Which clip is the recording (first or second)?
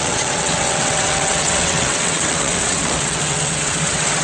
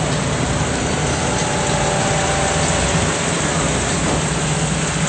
second